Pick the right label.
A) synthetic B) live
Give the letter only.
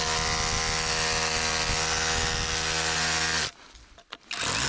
B